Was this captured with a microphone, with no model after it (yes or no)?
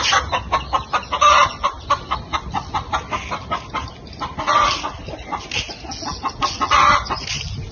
yes